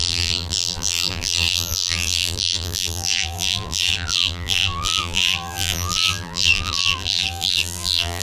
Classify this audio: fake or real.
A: fake